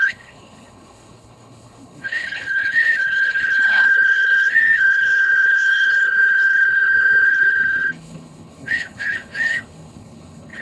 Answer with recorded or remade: remade